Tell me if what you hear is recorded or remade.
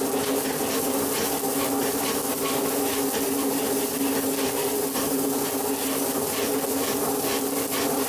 recorded